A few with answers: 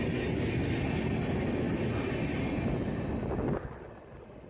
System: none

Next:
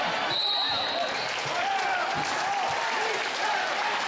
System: none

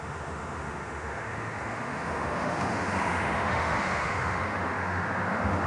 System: autoencoder, DAC-VAE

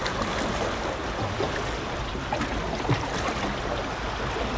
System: none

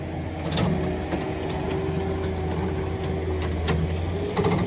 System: none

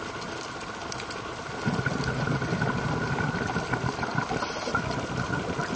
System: none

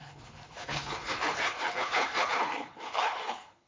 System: codec, HILCodec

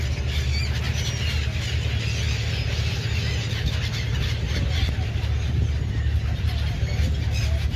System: none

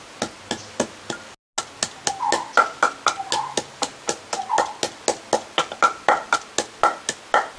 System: none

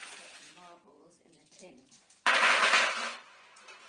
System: vocoder, Vocos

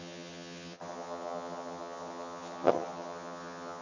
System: vocoder, HiFi-GAN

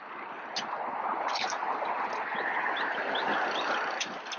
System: none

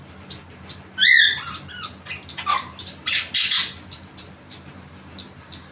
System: none